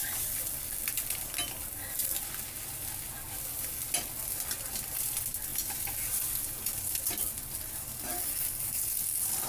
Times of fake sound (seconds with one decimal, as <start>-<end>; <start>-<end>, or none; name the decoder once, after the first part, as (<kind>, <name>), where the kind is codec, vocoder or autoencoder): none